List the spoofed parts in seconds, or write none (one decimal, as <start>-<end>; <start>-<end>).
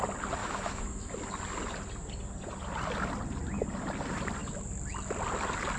0.4-1.1